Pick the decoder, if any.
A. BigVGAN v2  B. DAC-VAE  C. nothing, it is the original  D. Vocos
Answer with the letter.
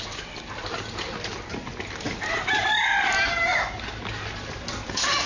C